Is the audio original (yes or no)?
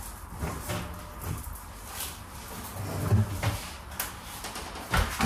yes